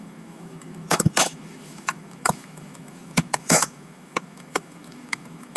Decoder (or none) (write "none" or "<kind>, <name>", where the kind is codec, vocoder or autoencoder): autoencoder, DAC-VAE